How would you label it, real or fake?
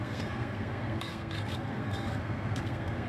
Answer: fake